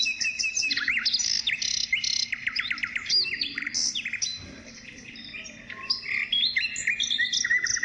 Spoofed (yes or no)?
no